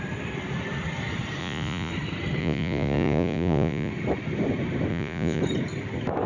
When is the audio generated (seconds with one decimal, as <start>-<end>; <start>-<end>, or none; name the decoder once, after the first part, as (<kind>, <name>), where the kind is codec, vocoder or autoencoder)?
1.4-1.9 (vocoder, Vocos); 2.4-3.9; 4.9-5.4